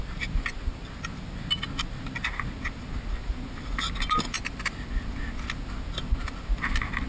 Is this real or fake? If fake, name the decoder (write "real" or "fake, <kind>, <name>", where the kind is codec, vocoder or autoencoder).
real